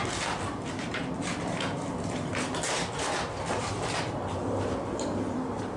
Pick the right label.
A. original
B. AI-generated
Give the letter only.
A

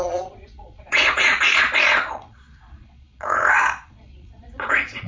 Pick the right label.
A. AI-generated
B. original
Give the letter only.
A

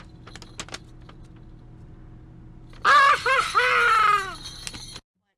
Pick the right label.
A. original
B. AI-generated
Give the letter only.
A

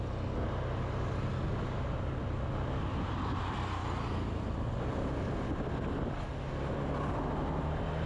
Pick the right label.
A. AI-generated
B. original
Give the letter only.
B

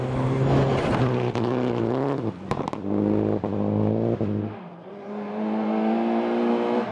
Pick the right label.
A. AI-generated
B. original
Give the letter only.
B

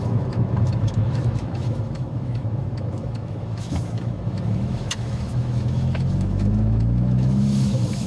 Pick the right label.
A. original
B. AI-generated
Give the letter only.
B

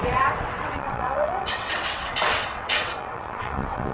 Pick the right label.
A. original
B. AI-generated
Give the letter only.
B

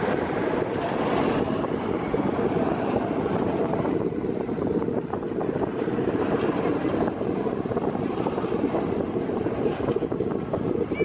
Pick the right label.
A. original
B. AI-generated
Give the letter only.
A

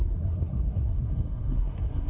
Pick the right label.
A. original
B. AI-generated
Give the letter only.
B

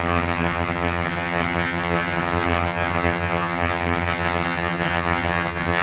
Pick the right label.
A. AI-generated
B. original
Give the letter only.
A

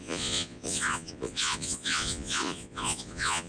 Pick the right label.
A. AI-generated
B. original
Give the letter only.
A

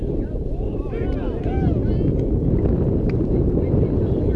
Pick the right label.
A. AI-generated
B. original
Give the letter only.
B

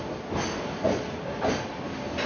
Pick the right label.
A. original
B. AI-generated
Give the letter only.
A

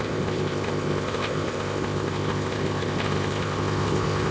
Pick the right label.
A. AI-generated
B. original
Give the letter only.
A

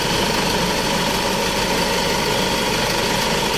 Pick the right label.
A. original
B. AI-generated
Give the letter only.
A